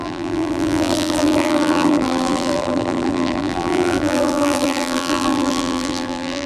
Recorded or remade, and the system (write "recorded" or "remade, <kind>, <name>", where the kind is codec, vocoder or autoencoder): remade, vocoder, BigVGAN v2